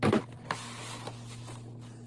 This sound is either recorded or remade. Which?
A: recorded